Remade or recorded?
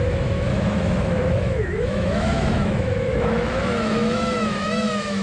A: remade